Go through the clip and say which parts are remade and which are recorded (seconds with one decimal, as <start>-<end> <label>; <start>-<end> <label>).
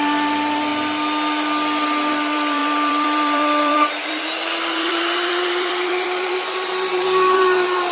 0.0-0.7 remade; 0.7-2.1 recorded; 2.1-7.9 remade